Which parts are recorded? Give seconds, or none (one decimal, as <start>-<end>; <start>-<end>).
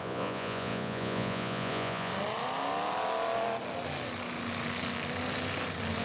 2.1-6.0